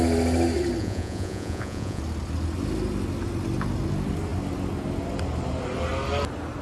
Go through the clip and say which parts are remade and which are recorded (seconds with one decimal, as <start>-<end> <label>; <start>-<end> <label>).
0.0-0.8 recorded; 0.8-2.0 remade; 2.0-6.6 recorded